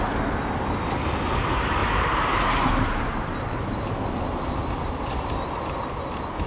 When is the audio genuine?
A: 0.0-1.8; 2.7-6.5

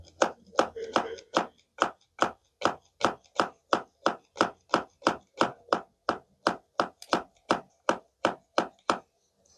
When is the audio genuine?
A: 0.0-9.6

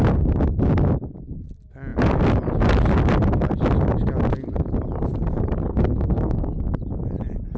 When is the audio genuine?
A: 0.0-5.7; 6.5-7.6